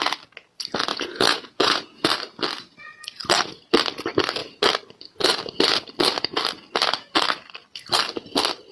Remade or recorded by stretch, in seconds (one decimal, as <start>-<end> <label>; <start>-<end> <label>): 0.0-0.9 recorded; 0.9-2.1 remade; 2.1-8.7 recorded